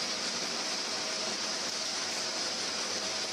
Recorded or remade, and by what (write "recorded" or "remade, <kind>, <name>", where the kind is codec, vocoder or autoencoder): recorded